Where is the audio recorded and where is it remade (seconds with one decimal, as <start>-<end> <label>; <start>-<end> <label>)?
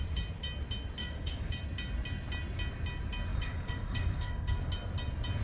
0.0-1.0 recorded; 1.0-1.5 remade; 1.5-3.3 recorded; 3.3-4.7 remade; 4.7-5.4 recorded